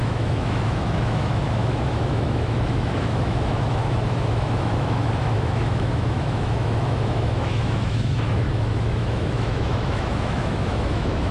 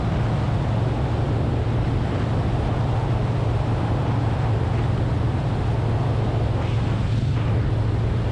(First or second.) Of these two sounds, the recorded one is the second